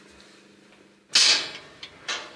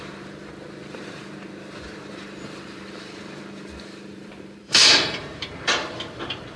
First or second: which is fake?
second